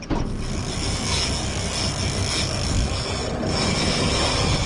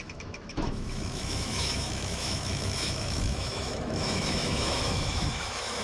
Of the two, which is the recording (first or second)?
first